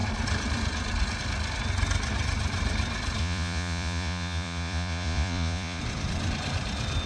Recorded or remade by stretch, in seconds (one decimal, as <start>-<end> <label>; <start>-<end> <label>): 0.0-3.2 recorded; 3.2-5.8 remade; 5.8-7.1 recorded